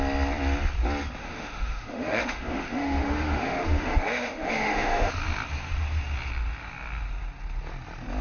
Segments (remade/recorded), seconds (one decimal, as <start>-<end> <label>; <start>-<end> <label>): 0.0-1.2 recorded; 1.2-5.1 remade; 5.1-8.2 recorded